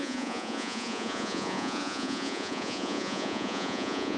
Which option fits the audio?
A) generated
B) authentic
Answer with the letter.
A